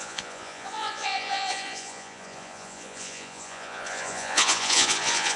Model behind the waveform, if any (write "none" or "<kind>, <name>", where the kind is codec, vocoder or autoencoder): vocoder, Vocos